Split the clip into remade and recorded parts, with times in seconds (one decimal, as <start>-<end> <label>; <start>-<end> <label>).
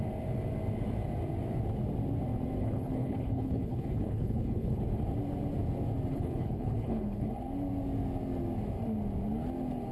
0.0-2.6 recorded; 2.6-4.8 remade; 4.8-6.1 recorded; 6.1-7.3 remade; 7.3-9.9 recorded